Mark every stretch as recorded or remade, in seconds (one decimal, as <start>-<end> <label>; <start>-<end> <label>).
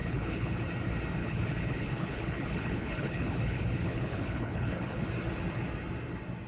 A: 0.0-0.7 remade; 0.7-1.2 recorded; 1.2-5.1 remade; 5.1-6.5 recorded